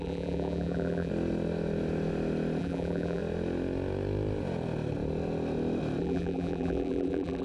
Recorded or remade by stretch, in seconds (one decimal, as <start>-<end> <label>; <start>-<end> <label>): 0.0-1.1 remade; 1.1-2.6 recorded; 2.6-3.2 remade; 3.2-6.0 recorded; 6.0-7.4 remade